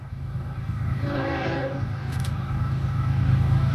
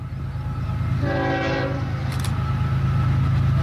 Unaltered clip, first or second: second